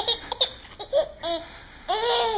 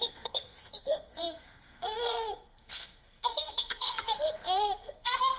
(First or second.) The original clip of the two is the first